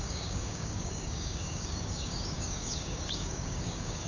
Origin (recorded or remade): remade